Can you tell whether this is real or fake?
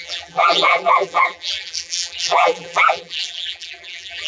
fake